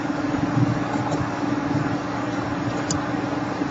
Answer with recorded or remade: remade